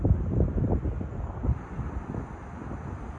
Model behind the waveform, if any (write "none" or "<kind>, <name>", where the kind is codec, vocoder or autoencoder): none